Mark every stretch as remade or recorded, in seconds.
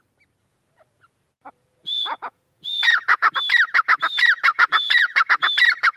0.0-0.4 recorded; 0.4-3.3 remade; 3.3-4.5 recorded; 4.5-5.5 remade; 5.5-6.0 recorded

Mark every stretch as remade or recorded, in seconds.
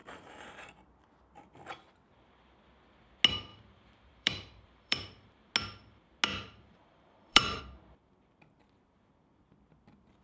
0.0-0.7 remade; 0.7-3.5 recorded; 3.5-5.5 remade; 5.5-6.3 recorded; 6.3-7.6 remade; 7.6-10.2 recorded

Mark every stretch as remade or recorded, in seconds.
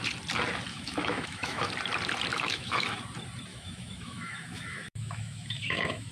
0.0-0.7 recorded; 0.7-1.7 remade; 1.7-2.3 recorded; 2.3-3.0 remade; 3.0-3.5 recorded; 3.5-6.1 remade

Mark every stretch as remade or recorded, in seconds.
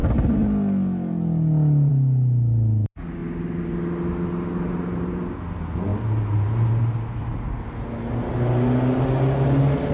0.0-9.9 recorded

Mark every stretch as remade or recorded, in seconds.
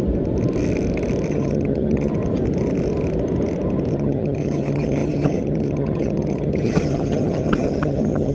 0.0-1.3 recorded; 1.3-2.1 remade; 2.1-3.9 recorded; 3.9-8.3 remade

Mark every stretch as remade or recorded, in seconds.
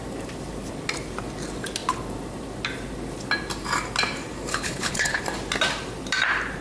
0.0-4.5 recorded; 4.5-5.2 remade; 5.2-6.6 recorded